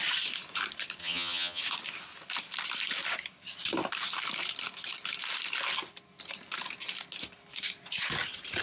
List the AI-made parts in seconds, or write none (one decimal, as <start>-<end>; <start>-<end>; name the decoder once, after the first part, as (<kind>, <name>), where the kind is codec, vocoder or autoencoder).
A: 1.0-1.6 (vocoder, HiFi-GAN)